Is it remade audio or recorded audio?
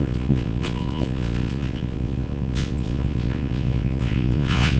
remade